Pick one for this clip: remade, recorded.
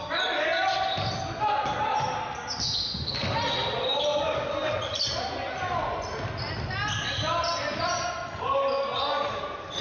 recorded